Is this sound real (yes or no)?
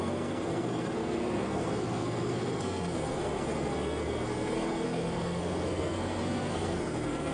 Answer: no